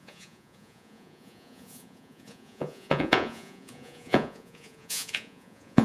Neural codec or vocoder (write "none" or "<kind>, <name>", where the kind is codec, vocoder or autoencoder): vocoder, Vocos